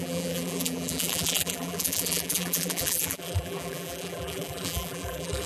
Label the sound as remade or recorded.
remade